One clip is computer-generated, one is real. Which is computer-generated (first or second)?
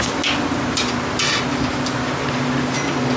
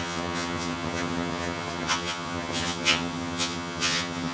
second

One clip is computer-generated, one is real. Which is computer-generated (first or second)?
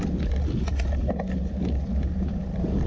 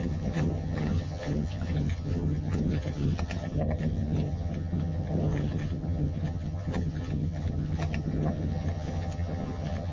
second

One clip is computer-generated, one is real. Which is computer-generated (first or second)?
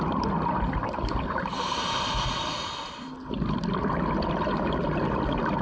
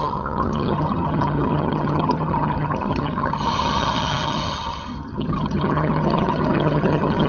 second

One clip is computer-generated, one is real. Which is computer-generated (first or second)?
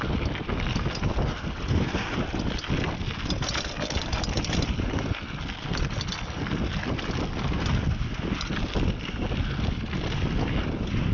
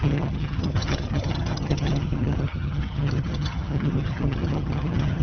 second